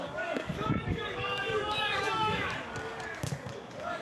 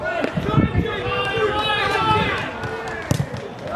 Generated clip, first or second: first